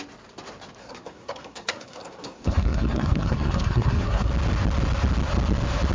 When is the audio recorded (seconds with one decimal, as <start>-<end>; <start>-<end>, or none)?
0.0-0.8; 4.3-5.9